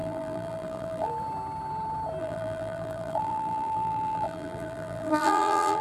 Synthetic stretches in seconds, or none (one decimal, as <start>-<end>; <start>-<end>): 0.0-1.1; 2.2-5.8